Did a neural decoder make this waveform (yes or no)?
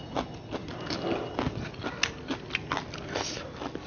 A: no